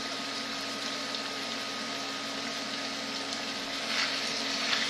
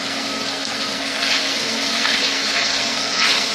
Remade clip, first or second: second